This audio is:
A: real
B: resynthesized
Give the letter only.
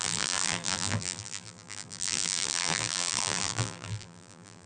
B